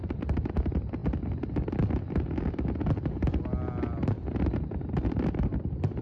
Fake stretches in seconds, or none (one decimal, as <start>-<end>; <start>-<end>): none